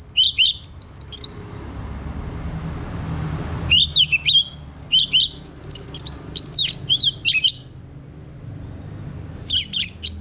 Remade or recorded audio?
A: recorded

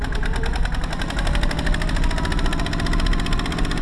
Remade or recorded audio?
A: remade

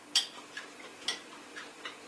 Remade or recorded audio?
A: recorded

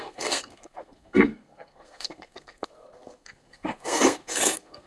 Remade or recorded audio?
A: remade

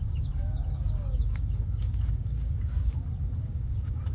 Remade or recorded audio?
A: remade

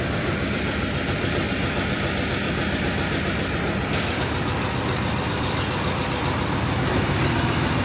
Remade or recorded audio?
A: remade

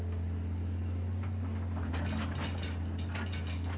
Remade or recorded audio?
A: recorded